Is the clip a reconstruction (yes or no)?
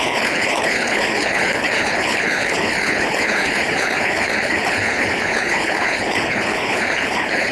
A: yes